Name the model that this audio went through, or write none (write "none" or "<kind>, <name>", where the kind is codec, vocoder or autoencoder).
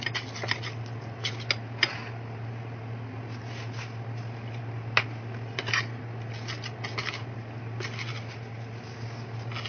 none